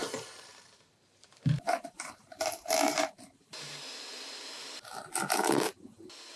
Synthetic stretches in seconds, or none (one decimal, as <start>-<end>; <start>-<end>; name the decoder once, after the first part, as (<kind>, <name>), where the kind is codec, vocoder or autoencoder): 0.0-3.8 (vocoder, BigVGAN v2)